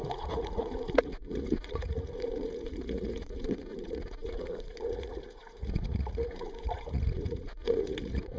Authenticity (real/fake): fake